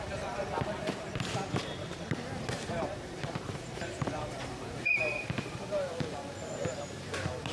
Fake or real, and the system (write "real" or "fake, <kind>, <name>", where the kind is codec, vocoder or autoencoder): fake, vocoder, BigVGAN v2